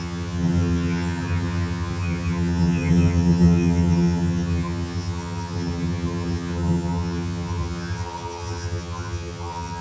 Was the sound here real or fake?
fake